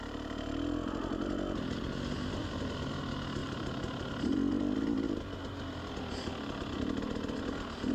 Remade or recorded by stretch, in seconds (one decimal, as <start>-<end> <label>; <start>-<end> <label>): 0.0-2.4 recorded; 2.4-2.9 remade; 2.9-3.4 recorded; 3.4-5.4 remade; 5.4-7.9 recorded